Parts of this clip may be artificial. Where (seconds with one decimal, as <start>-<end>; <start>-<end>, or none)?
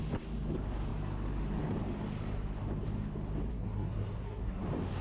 3.5-4.6